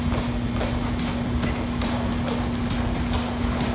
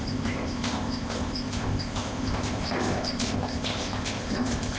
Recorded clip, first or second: first